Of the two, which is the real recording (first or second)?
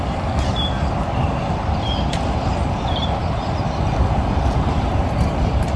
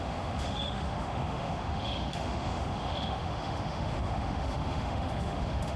first